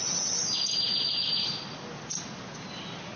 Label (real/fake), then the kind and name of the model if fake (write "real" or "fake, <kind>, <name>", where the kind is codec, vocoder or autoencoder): real